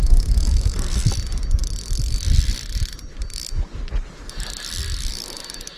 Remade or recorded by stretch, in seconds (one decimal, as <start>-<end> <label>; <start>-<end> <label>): 0.0-1.1 remade; 1.1-5.8 recorded